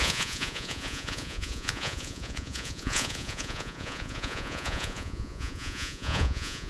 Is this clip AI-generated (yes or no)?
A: yes